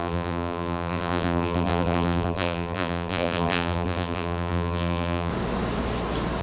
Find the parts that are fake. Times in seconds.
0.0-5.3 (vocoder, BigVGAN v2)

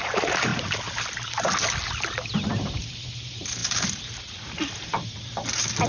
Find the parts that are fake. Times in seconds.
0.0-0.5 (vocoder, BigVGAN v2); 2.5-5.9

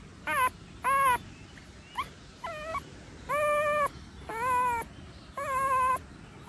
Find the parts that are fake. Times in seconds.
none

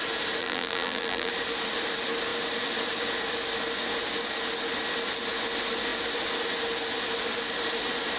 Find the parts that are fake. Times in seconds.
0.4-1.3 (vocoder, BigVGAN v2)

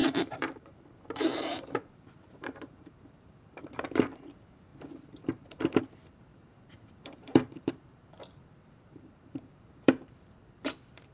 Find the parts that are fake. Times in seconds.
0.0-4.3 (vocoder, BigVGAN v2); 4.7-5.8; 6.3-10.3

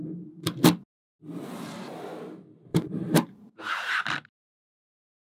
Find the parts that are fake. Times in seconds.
2.7-4.0 (vocoder, BigVGAN v2)

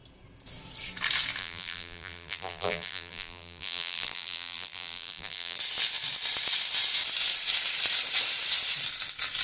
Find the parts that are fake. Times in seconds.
1.4-5.6 (vocoder, BigVGAN v2)

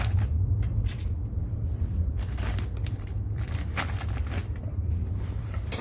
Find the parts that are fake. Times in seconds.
0.0-5.8 (vocoder, BigVGAN v2)